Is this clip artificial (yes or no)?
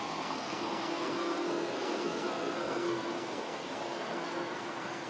yes